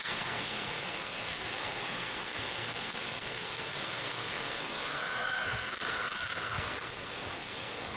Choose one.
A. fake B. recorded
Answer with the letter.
A